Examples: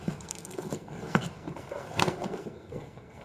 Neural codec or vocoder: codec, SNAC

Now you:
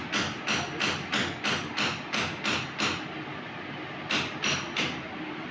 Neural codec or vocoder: none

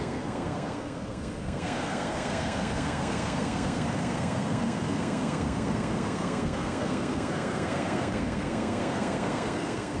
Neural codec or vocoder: codec, SNAC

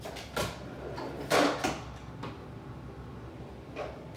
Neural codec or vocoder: none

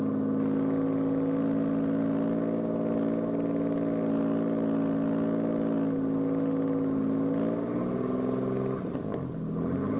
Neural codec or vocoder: none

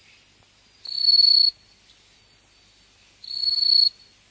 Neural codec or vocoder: none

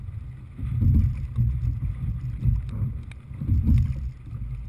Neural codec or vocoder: none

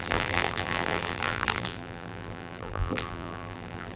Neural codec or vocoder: vocoder, BigVGAN v2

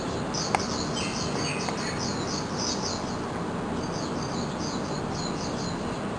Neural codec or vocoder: none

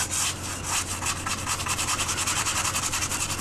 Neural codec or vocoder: none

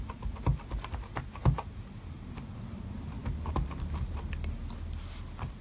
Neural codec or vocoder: none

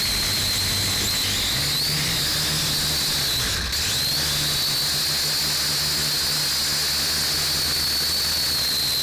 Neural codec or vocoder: none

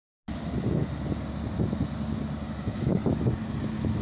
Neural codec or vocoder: none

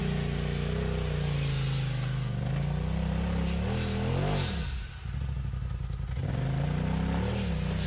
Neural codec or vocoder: none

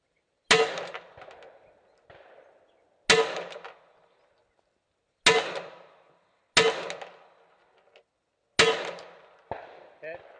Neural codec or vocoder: none